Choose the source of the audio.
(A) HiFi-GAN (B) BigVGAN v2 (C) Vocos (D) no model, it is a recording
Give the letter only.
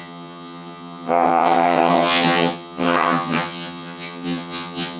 A